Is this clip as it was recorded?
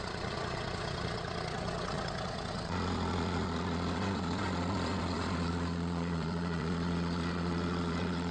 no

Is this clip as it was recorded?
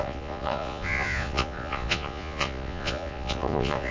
no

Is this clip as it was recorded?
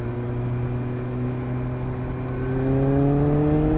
yes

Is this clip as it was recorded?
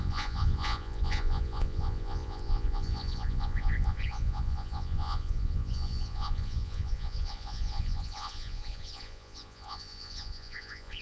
no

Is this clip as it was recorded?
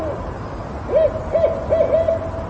yes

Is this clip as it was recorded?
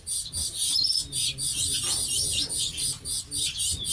yes